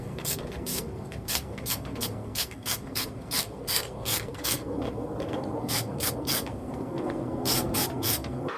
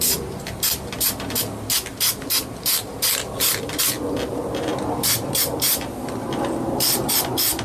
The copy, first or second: first